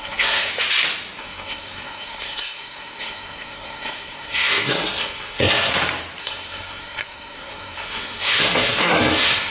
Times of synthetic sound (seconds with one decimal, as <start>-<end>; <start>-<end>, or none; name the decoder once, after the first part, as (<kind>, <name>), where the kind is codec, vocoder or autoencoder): 0.0-0.5 (codec, SNAC); 1.2-5.7; 6.2-9.5